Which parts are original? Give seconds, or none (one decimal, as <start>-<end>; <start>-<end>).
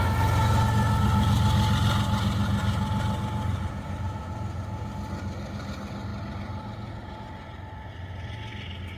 0.0-9.0